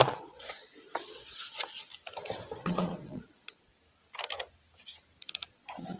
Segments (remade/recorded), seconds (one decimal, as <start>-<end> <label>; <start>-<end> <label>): 0.0-1.9 remade; 1.9-2.6 recorded; 2.6-3.7 remade; 3.7-5.5 recorded; 5.5-6.0 remade